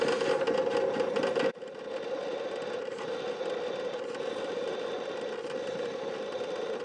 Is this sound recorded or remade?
recorded